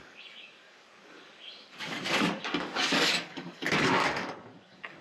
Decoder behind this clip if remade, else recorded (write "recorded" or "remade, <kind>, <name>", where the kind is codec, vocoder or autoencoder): remade, codec, DAC